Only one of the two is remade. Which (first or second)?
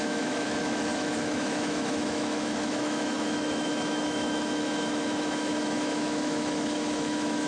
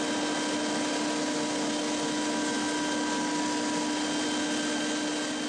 first